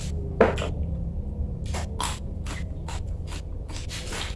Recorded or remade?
recorded